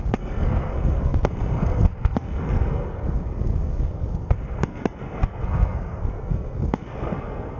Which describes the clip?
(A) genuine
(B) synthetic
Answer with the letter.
B